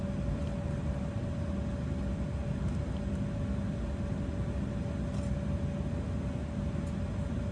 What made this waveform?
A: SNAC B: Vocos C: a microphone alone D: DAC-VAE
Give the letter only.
C